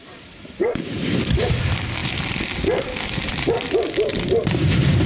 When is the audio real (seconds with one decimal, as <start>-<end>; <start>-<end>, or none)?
none